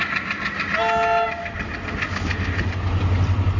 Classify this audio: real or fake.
real